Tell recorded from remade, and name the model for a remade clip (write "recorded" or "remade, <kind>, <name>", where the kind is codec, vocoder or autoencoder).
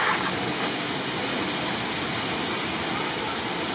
recorded